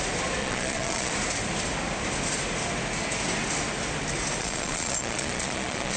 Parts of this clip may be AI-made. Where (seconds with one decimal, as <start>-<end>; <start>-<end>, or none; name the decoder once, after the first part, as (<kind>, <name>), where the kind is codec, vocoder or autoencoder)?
0.4-1.1 (vocoder, Vocos); 4.4-6.0